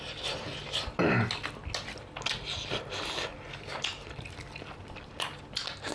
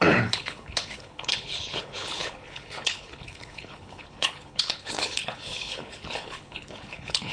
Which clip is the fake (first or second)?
second